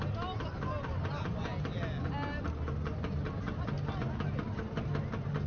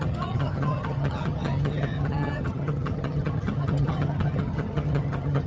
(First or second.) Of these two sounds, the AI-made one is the second